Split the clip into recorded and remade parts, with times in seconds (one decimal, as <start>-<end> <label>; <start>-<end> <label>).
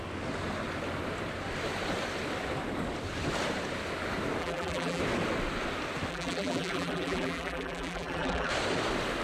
0.0-4.4 recorded; 4.4-5.0 remade; 5.0-6.1 recorded; 6.1-8.5 remade; 8.5-9.2 recorded